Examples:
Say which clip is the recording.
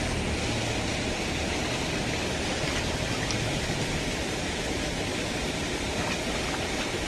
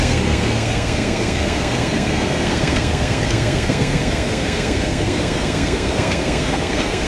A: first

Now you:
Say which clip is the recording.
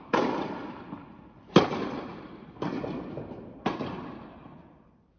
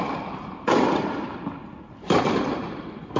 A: first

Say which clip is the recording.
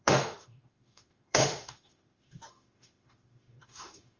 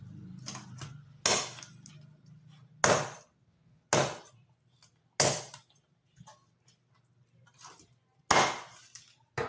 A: second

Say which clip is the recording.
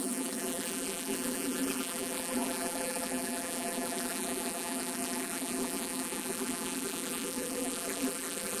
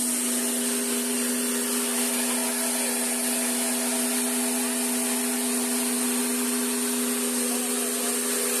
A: second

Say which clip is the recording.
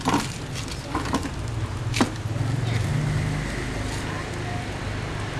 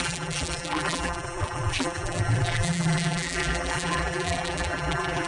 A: first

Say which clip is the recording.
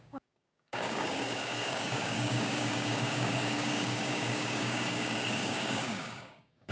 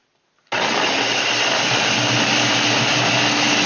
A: second